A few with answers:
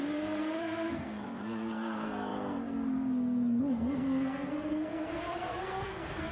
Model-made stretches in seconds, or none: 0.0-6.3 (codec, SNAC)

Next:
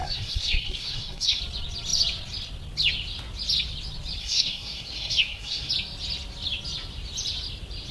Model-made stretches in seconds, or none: 0.0-1.4 (codec, SNAC); 4.2-5.7

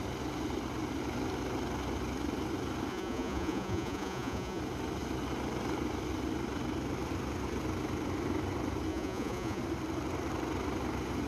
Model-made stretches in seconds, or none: 2.9-4.6 (vocoder, Vocos); 8.9-9.6

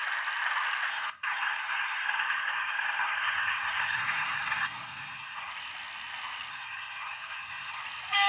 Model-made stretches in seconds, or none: 0.9-5.5 (codec, SNAC); 6.5-7.8

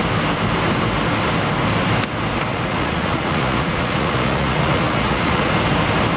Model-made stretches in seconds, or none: 2.5-5.5 (vocoder, Vocos)

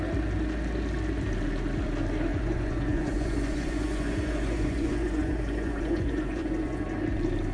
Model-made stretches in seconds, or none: 2.3-6.8 (vocoder, Vocos)

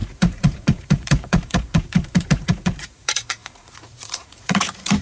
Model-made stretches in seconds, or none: 0.0-5.0 (vocoder, Vocos)